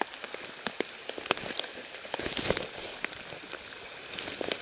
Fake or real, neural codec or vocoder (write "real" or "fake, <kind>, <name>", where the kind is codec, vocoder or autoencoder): real